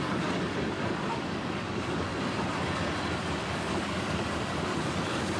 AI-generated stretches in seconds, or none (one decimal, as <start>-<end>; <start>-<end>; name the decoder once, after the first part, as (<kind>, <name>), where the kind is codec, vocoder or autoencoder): 0.0-2.1 (codec, DAC); 3.4-5.4